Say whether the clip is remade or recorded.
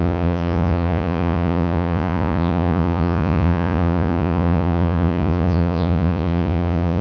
remade